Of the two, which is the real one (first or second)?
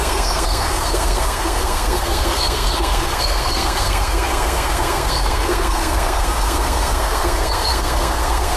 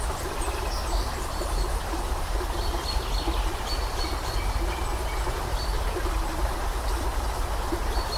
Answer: second